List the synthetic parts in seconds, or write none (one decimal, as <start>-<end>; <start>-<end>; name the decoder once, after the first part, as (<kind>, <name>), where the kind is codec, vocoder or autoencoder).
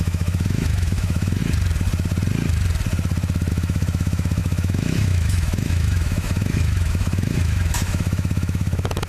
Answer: 0.0-1.4 (autoencoder, DAC-VAE); 3.5-9.1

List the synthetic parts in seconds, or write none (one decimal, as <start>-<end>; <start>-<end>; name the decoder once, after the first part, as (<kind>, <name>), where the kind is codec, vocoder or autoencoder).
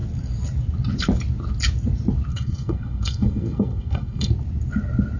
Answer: 2.3-4.3 (codec, SNAC)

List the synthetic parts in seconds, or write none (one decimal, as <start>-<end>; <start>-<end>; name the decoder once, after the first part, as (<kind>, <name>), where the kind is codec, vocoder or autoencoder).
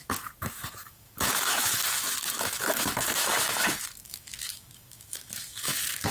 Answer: 0.0-6.1 (autoencoder, DAC-VAE)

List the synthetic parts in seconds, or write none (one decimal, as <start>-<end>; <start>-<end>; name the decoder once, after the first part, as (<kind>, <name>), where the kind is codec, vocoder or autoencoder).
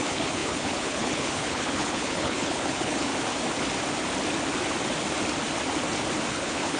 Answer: 0.0-3.1 (codec, HILCodec); 6.3-6.8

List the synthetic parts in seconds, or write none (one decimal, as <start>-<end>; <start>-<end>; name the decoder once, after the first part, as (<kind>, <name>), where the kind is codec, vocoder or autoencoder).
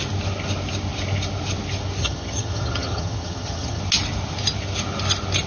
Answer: 2.0-3.8 (vocoder, HiFi-GAN)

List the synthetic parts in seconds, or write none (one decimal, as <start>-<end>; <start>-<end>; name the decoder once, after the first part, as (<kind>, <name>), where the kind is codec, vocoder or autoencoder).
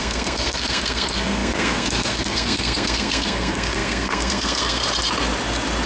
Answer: 0.0-4.8 (codec, SNAC)